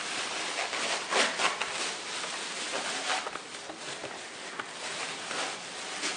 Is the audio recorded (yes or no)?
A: yes